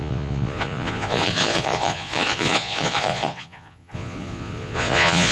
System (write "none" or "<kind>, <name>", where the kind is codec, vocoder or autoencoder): vocoder, Vocos